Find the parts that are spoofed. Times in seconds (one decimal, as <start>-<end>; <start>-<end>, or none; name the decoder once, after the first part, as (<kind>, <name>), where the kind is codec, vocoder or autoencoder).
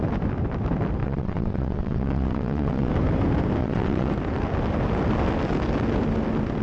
1.0-2.9 (vocoder, WaveNeXt); 3.6-4.1